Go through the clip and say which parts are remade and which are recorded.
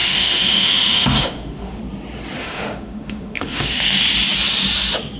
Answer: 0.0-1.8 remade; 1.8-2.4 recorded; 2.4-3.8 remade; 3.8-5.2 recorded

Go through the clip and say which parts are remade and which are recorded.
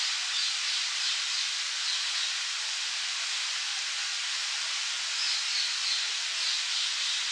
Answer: 0.0-7.3 recorded